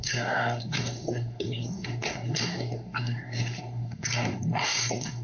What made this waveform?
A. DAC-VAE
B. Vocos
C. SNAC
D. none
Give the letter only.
C